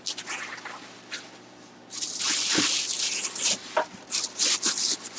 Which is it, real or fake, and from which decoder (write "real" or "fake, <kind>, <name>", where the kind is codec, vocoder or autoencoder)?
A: fake, vocoder, BigVGAN v2